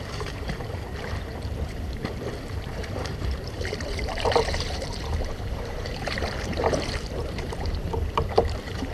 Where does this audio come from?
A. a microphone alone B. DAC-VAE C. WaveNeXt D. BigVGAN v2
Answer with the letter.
D